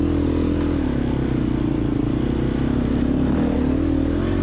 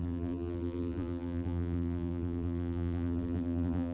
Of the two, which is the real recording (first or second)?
first